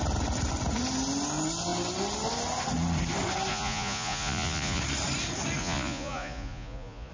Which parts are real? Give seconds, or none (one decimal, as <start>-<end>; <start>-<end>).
0.0-3.5; 4.8-5.6